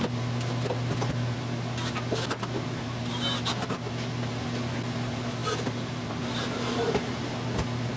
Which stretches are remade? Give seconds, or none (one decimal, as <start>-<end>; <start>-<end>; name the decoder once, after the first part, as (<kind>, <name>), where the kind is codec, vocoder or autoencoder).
none